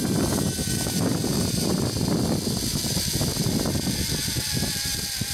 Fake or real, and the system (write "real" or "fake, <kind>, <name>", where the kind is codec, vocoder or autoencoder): real